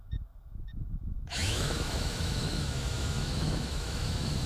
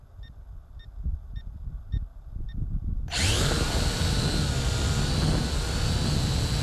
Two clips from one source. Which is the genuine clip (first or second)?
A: second